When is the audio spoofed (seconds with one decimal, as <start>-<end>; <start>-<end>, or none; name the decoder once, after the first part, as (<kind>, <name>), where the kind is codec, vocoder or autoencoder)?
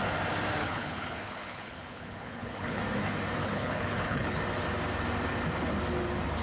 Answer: 0.6-2.8 (codec, HILCodec); 3.4-4.4